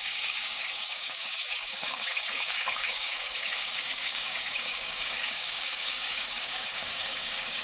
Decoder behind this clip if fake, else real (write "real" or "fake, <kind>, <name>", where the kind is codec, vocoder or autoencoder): fake, codec, DAC